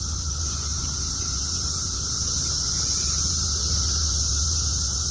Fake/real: fake